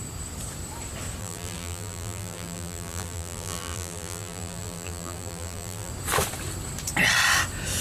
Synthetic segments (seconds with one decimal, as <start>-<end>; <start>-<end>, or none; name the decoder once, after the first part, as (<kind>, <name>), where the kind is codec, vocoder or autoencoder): 1.2-5.9 (vocoder, BigVGAN v2)